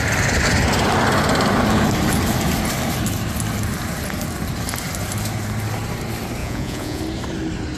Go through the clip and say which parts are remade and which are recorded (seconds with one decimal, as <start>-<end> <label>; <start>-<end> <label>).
0.0-6.4 recorded; 6.4-7.0 remade; 7.0-7.8 recorded